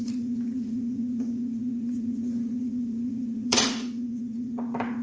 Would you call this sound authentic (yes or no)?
no